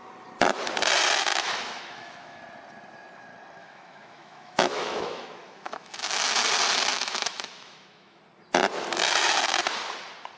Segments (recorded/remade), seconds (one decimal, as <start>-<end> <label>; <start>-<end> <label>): 0.0-1.3 recorded; 1.3-2.4 remade; 2.4-3.6 recorded; 3.6-6.3 remade; 6.3-6.9 recorded; 6.9-8.2 remade; 8.2-10.4 recorded